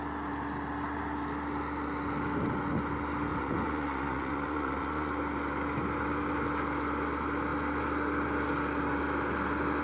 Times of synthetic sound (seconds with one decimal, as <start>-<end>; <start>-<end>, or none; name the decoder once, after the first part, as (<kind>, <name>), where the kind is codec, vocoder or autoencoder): 3.3-5.1 (vocoder, Vocos)